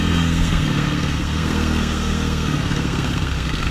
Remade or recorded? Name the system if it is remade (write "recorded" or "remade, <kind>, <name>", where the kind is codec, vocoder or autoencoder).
remade, codec, SNAC